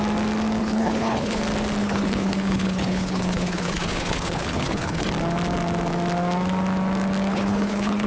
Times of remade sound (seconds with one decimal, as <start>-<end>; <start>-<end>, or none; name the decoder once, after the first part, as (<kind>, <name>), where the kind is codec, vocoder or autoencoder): 0.6-1.4 (codec, HILCodec); 1.8-5.1; 7.3-8.1